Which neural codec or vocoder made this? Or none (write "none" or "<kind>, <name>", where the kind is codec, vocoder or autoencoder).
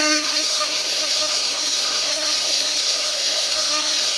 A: codec, SNAC